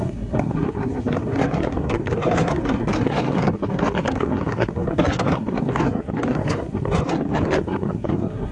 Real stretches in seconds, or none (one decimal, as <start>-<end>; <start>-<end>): none